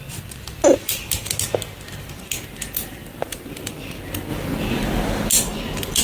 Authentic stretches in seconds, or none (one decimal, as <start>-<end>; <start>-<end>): 0.0-3.0; 3.7-6.0